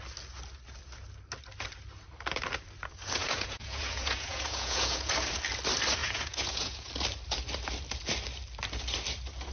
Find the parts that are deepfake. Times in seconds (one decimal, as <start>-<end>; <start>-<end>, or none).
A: 3.2-5.1; 6.0-6.9